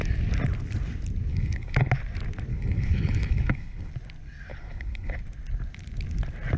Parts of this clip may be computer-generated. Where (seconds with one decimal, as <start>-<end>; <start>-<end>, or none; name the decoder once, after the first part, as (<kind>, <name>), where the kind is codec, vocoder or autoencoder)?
1.3-1.9 (codec, HILCodec); 2.5-3.9; 4.5-5.2